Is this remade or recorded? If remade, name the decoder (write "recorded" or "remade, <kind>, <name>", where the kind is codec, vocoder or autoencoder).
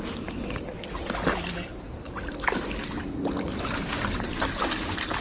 recorded